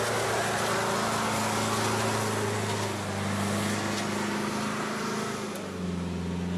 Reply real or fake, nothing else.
real